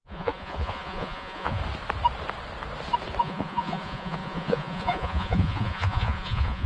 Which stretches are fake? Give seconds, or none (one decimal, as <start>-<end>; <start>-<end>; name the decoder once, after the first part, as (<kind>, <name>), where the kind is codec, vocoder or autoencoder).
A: 0.0-1.6 (vocoder, Vocos); 3.2-6.7